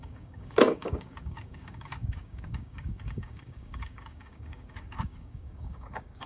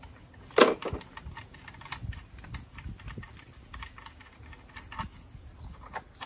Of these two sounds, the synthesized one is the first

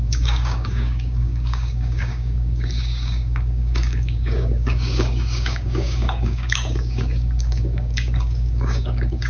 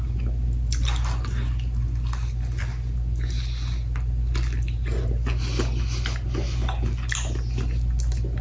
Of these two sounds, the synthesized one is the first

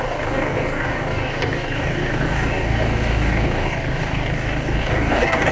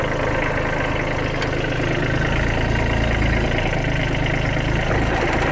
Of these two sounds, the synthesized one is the first